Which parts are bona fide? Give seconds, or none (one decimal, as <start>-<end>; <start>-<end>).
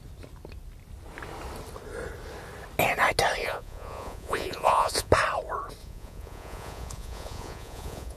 0.0-3.4; 5.1-5.8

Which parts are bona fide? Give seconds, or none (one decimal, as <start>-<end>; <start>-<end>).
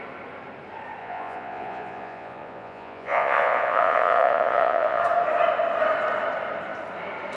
0.0-1.0; 5.0-7.4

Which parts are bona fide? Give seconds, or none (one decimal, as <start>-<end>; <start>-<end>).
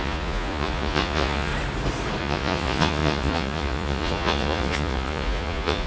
1.5-2.2